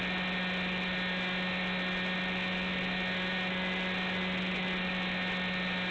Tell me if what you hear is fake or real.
real